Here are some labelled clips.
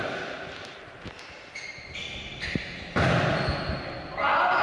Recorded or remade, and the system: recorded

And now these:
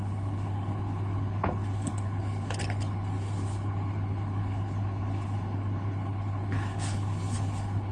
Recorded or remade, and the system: remade, codec, HILCodec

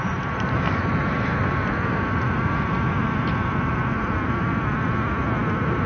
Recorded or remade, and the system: recorded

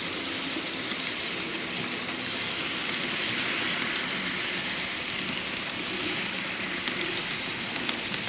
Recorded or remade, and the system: recorded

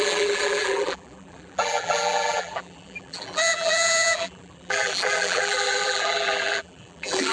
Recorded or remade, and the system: remade, vocoder, BigVGAN v2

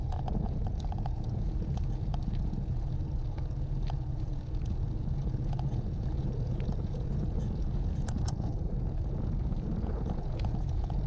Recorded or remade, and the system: remade, vocoder, Vocos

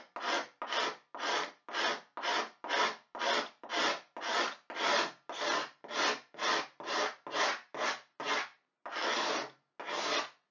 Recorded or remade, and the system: recorded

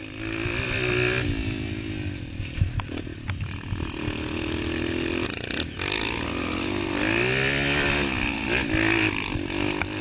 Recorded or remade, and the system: recorded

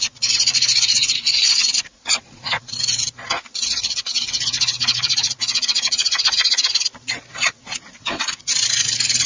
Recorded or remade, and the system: remade, vocoder, Vocos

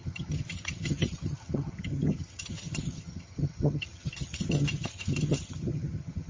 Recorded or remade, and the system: remade, vocoder, HiFi-GAN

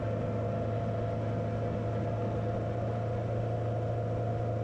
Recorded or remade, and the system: recorded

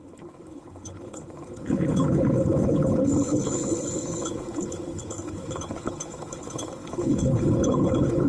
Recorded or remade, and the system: remade, codec, HILCodec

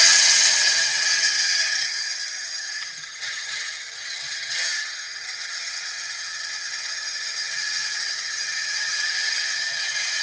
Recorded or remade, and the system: remade, vocoder, HiFi-GAN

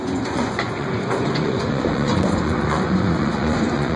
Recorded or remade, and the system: remade, vocoder, Vocos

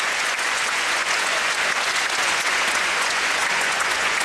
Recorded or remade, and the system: remade, vocoder, Vocos